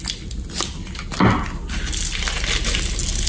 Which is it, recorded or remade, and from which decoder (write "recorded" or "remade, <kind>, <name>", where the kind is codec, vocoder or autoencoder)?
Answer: recorded